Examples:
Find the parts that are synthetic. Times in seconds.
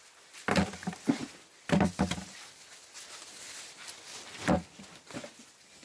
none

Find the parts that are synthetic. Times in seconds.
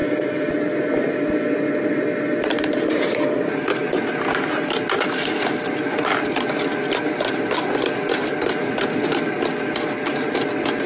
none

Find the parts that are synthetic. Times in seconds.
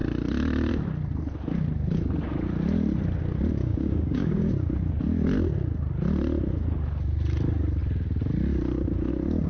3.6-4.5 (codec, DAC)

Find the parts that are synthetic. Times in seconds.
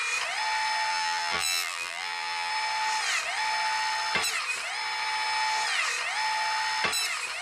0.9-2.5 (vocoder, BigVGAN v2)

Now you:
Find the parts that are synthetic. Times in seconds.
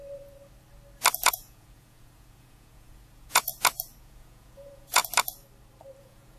1.3-3.5 (vocoder, Vocos); 4.0-5.0; 6.0-6.4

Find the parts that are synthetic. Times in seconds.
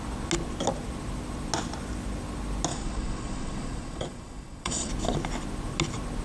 2.7-4.9 (vocoder, Vocos)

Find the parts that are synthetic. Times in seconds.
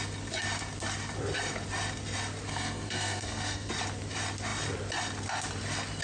2.5-3.7 (codec, SNAC)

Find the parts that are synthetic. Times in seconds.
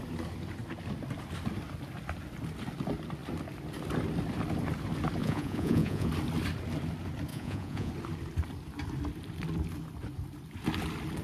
5.2-6.1 (vocoder, Vocos); 7.3-7.9